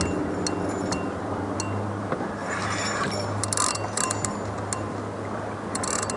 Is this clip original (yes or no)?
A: yes